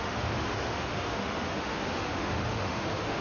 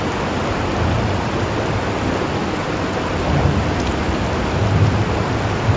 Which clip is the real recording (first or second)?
second